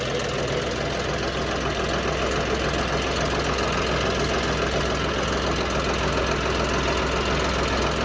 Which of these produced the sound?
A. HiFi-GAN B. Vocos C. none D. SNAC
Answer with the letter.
C